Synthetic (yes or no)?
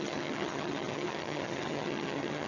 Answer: yes